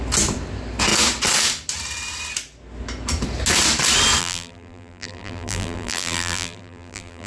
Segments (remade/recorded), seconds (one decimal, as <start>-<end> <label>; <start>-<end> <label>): 0.0-4.2 recorded; 4.2-7.3 remade